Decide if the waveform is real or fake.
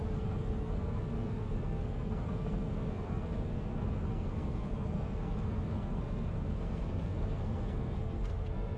fake